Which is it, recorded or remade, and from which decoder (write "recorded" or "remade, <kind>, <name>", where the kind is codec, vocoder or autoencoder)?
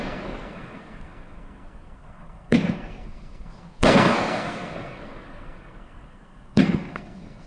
remade, codec, SNAC